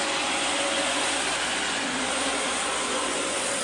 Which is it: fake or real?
fake